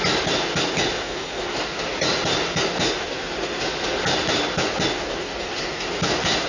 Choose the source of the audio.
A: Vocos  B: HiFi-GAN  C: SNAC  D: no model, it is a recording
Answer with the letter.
D